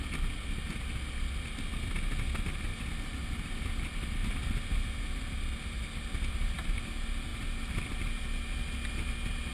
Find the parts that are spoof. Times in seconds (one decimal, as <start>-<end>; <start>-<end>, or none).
none